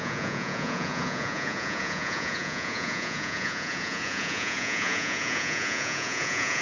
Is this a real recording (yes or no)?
no